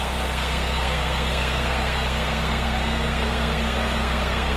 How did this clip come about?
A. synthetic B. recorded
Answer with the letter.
A